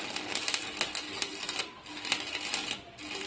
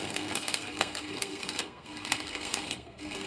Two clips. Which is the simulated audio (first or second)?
second